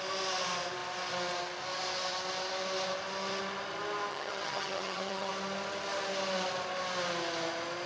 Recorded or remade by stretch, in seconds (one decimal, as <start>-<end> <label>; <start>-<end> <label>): 0.0-4.1 recorded; 4.1-5.3 remade; 5.3-7.9 recorded